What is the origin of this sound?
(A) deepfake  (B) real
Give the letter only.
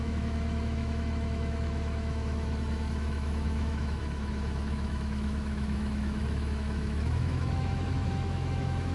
A